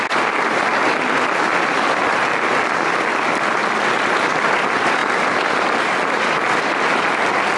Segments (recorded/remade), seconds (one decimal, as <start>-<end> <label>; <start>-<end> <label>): 0.0-7.6 recorded